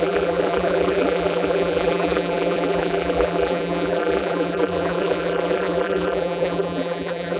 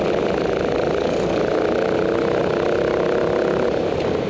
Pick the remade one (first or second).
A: first